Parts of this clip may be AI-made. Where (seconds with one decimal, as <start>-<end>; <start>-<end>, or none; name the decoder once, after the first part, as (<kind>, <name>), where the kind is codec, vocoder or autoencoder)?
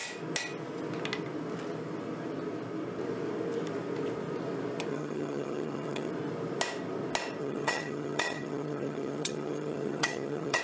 4.9-6.1 (vocoder, HiFi-GAN); 7.4-10.6